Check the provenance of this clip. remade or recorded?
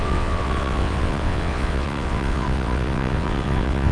remade